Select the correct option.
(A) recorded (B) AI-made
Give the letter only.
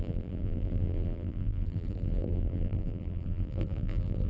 B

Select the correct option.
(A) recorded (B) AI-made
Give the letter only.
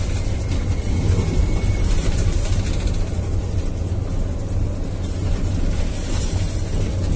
A